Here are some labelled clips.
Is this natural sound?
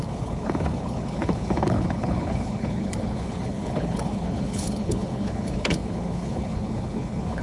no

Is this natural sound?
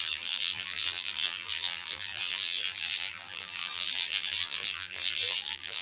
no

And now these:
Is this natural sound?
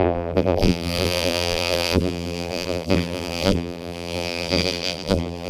no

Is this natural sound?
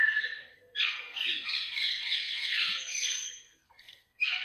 no